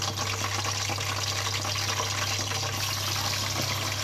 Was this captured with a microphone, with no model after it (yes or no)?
yes